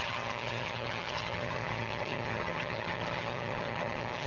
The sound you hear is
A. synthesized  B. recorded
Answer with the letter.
A